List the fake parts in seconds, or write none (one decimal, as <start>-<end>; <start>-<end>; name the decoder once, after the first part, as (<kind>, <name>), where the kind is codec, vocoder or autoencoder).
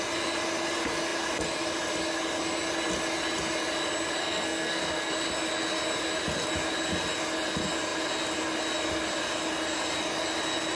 4.2-5.1 (codec, SNAC)